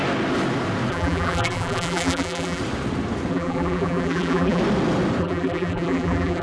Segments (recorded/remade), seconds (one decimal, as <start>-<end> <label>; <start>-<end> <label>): 0.0-0.9 recorded; 0.9-2.6 remade; 2.6-3.3 recorded; 3.3-4.6 remade; 4.6-5.2 recorded; 5.2-6.4 remade